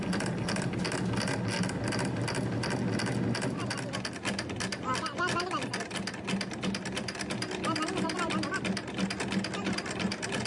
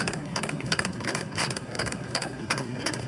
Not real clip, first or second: second